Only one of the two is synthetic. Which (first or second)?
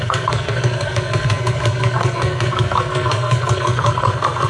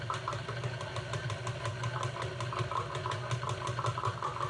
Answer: first